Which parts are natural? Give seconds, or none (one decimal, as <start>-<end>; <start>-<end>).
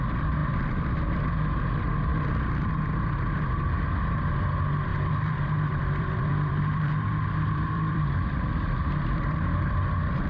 0.0-4.9; 9.9-10.3